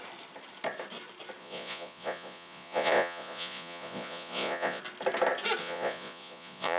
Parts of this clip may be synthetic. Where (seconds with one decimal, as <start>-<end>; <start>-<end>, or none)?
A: 1.4-4.8; 5.6-6.8